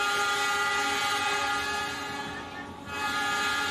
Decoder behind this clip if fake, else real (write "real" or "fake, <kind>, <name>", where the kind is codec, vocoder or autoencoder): real